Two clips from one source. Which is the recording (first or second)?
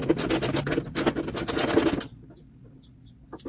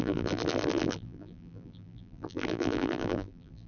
first